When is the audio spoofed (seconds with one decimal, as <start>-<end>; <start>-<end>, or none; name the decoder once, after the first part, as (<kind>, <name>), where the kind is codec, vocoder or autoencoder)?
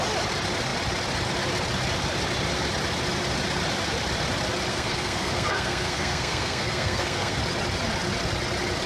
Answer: 4.7-7.4 (codec, SNAC)